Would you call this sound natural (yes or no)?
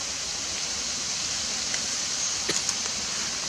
yes